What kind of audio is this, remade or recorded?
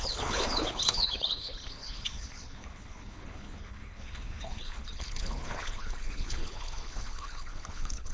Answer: remade